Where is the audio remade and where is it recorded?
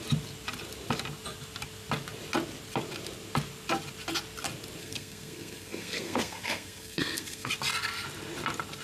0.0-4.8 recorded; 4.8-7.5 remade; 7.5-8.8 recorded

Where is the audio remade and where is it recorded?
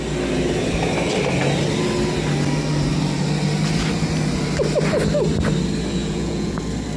0.0-6.0 recorded; 6.0-6.6 remade; 6.6-7.0 recorded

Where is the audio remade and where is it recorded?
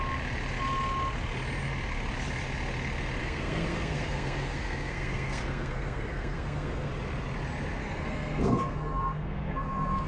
0.0-3.2 recorded; 3.2-6.9 remade; 6.9-7.8 recorded; 7.8-10.1 remade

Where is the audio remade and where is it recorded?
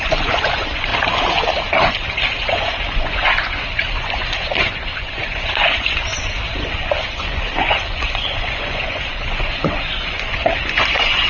0.0-0.9 remade; 0.9-1.8 recorded; 1.8-11.3 remade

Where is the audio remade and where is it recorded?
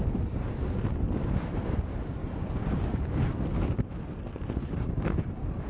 0.0-2.2 recorded; 2.2-3.3 remade; 3.3-4.6 recorded; 4.6-5.2 remade; 5.2-5.7 recorded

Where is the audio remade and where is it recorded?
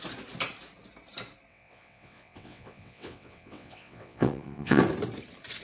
0.0-1.5 recorded; 1.5-4.8 remade; 4.8-5.6 recorded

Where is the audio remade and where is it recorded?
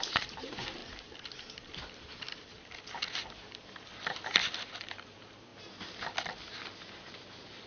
0.0-0.8 remade; 0.8-4.9 recorded; 4.9-5.5 remade; 5.5-6.7 recorded; 6.7-7.7 remade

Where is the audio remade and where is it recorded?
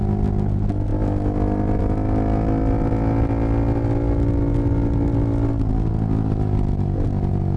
0.0-7.6 recorded